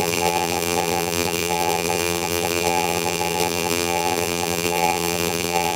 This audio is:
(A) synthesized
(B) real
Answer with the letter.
A